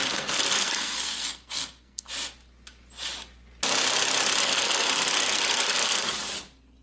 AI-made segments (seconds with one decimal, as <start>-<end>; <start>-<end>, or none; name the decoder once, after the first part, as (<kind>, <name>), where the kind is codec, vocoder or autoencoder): 0.0-2.1 (codec, SNAC); 4.4-6.1